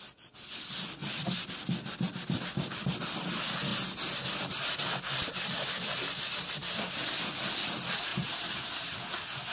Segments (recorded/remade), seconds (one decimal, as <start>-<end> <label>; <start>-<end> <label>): 0.0-9.5 recorded